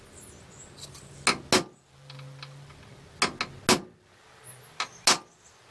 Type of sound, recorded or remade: recorded